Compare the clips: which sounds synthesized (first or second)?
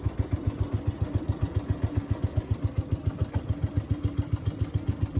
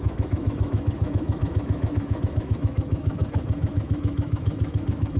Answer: second